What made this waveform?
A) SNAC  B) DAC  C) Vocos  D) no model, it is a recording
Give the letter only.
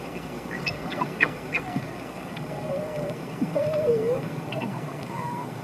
A